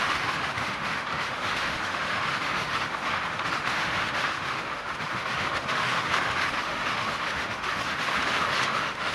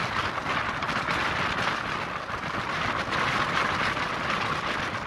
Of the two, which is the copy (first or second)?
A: first